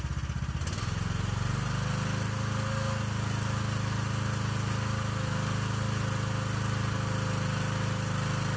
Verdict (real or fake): real